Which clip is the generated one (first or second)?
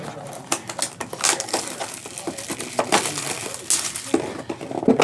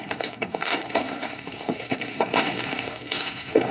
second